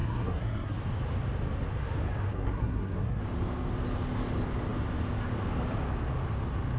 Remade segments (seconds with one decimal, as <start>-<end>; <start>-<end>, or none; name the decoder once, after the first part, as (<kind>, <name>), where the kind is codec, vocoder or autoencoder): 0.0-0.8 (codec, SNAC); 2.3-3.2